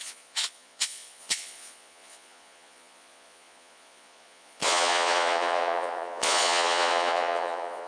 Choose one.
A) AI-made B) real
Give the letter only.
A